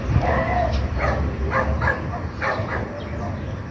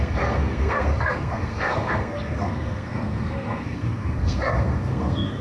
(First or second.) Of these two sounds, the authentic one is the first